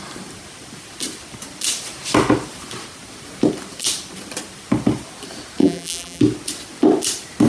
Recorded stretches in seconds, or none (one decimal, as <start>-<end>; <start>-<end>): 0.0-5.6; 6.2-7.5

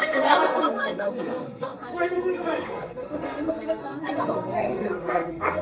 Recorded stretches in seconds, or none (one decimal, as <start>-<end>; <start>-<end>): none

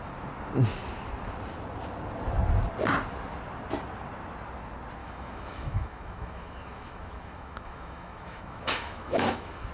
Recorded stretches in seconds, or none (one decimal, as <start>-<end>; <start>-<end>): 0.0-5.0

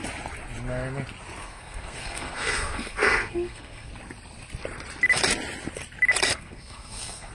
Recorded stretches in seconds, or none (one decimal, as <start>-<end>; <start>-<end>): 0.0-1.4; 3.9-6.3